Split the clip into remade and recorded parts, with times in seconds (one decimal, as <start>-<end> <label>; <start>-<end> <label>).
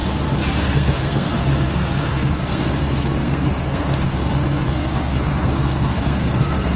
0.0-0.6 recorded; 0.6-6.8 remade